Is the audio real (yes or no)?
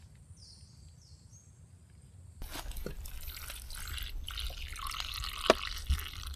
yes